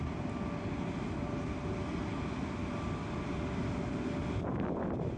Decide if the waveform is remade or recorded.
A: recorded